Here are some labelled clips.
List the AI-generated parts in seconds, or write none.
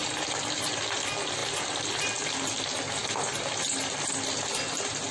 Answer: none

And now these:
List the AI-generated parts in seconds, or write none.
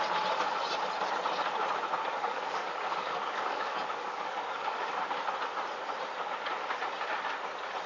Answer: 2.1-4.9 (codec, DAC)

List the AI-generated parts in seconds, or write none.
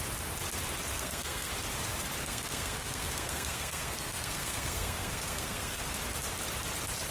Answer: 0.9-1.5 (codec, SNAC); 2.2-5.8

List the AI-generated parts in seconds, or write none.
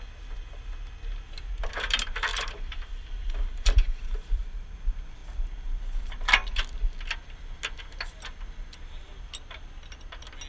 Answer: 2.3-4.7 (vocoder, BigVGAN v2)